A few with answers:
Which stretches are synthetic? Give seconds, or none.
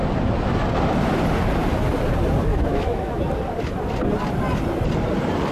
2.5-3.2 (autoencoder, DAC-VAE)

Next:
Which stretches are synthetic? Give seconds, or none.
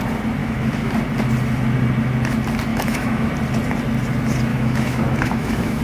0.4-0.9 (autoencoder, DAC-VAE); 2.7-3.3; 4.5-5.8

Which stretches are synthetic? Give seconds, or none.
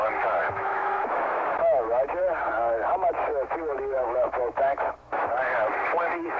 0.4-2.2 (autoencoder, DAC-VAE); 3.3-5.3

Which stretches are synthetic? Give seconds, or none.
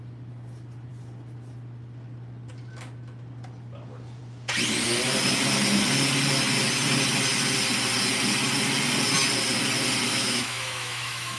10.1-11.4 (autoencoder, DAC-VAE)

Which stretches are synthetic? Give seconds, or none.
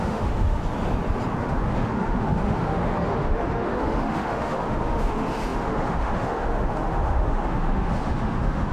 0.0-0.6 (autoencoder, DAC-VAE); 1.4-8.7